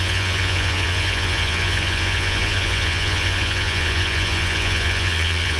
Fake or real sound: fake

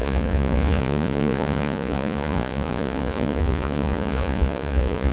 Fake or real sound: fake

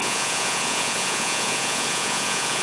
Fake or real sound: fake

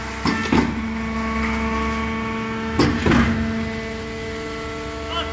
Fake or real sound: real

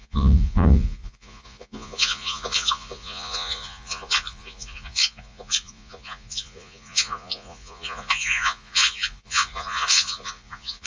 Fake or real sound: fake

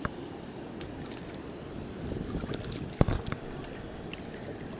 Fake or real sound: real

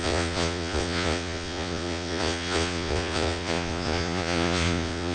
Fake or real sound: fake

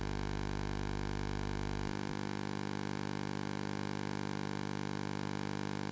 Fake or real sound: real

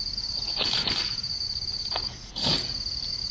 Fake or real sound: fake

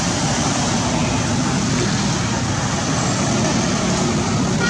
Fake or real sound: real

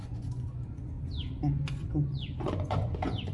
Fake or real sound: fake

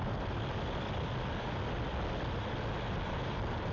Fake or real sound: real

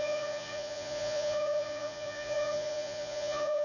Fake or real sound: fake